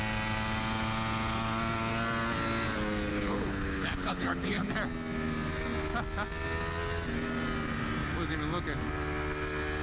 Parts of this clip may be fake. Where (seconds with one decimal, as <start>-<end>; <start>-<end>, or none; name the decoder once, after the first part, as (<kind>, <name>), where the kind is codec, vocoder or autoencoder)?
3.1-4.7 (codec, HILCodec)